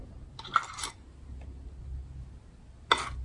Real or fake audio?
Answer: real